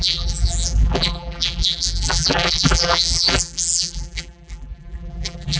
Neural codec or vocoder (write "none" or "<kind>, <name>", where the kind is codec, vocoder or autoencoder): vocoder, BigVGAN v2